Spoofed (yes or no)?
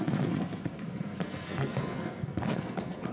yes